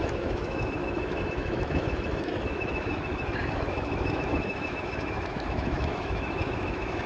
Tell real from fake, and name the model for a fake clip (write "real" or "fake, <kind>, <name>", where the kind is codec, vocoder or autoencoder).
fake, autoencoder, DAC-VAE